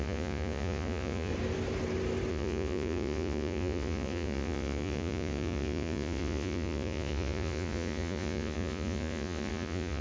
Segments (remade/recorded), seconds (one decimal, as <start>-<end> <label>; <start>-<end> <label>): 0.0-1.3 remade; 1.3-2.3 recorded; 2.3-10.0 remade